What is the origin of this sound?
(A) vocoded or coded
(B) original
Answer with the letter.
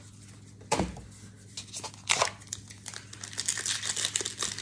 B